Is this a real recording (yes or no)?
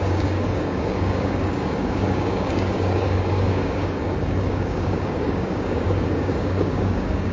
no